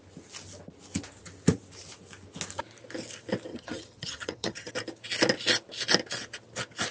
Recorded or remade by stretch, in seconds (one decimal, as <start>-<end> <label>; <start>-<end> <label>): 0.0-3.5 recorded; 3.5-4.7 remade; 4.7-6.9 recorded